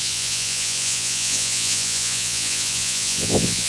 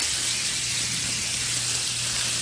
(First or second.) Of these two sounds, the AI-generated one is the first